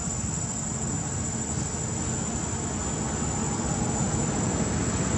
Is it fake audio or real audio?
real